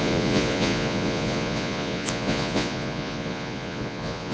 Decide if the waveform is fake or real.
fake